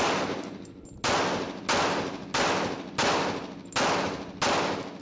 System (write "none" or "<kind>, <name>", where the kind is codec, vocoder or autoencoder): none